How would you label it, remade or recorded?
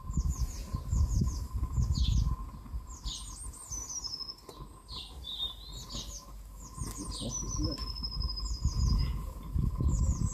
recorded